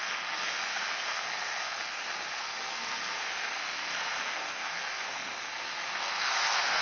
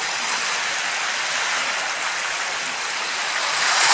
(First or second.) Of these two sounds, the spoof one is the first